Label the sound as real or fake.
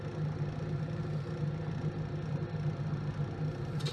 real